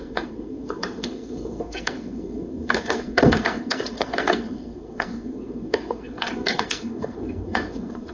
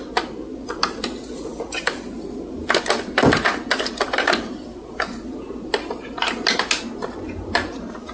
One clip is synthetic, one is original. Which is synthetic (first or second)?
first